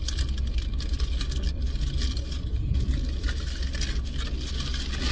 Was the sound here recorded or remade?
recorded